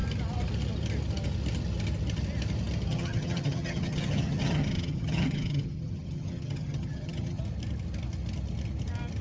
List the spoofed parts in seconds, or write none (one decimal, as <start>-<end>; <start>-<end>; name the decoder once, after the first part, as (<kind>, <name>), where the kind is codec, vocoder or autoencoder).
2.9-7.4 (vocoder, HiFi-GAN)